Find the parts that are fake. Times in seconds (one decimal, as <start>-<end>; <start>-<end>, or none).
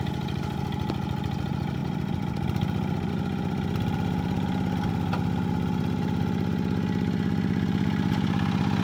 none